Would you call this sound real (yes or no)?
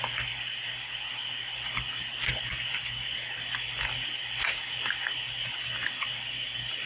yes